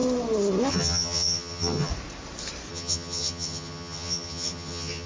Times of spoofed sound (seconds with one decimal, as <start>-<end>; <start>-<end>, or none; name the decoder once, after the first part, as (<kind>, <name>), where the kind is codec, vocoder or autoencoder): 0.7-1.9 (vocoder, HiFi-GAN); 2.7-5.1